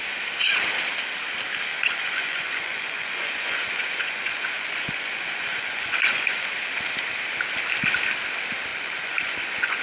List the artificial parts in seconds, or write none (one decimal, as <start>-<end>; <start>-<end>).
1.7-6.5; 8.7-9.8